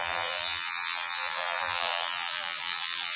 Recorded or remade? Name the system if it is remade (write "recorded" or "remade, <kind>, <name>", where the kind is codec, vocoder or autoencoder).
remade, vocoder, BigVGAN v2